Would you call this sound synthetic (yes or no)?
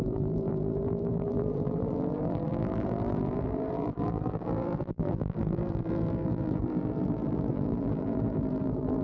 yes